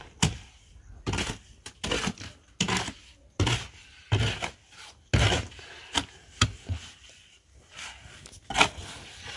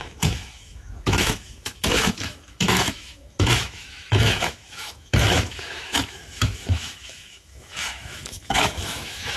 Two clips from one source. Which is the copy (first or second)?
second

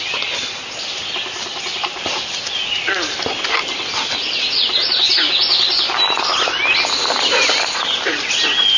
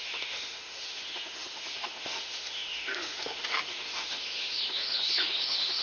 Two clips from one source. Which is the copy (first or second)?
second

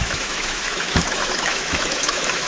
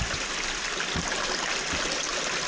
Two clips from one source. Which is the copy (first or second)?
first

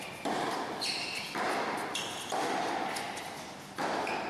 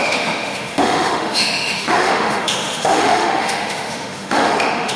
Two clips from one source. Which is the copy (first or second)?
second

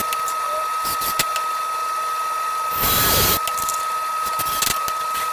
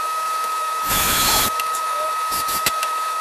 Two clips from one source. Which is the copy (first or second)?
second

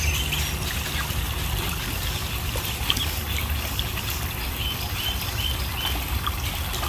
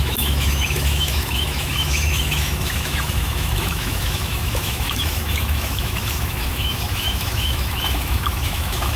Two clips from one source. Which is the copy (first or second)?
second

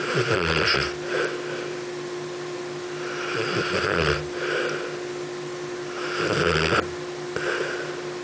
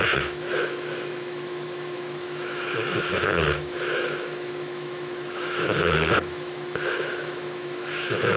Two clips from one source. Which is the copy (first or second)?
second